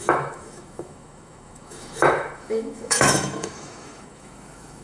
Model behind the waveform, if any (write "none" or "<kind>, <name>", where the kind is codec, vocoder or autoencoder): autoencoder, DAC-VAE